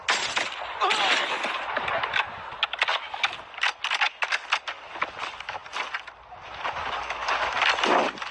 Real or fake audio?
real